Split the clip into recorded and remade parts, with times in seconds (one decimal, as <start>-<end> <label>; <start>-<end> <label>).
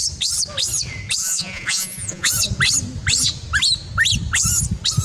0.0-1.2 recorded; 1.2-2.3 remade; 2.3-5.0 recorded